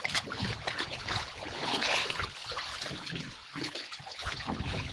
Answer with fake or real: fake